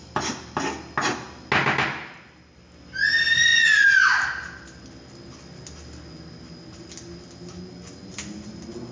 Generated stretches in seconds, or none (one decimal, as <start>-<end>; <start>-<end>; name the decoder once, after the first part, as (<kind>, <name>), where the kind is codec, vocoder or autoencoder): none